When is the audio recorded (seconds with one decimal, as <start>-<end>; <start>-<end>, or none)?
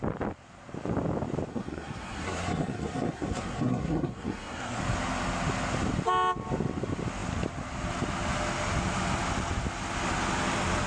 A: 0.0-1.5; 4.8-10.9